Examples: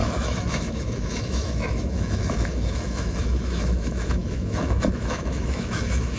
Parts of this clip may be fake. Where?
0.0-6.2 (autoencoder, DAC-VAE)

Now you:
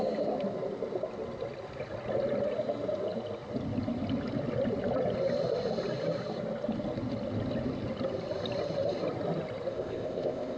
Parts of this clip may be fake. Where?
9.7-10.6 (codec, ZipCodec)